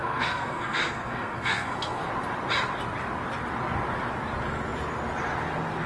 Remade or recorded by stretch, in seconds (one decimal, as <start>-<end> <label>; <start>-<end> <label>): 0.0-2.1 remade; 2.1-5.9 recorded